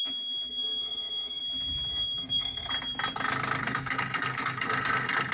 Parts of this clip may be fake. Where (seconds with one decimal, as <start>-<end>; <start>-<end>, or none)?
0.5-1.4; 1.9-2.7; 3.6-5.3

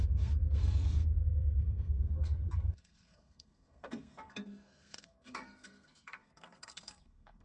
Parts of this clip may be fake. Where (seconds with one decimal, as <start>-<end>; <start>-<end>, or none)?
0.0-7.4

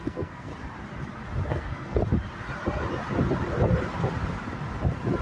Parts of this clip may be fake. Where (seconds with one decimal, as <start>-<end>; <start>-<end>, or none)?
0.0-0.5; 1.5-2.0